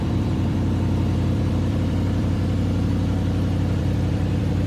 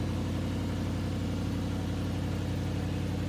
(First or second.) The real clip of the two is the second